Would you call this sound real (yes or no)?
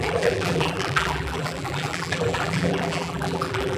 no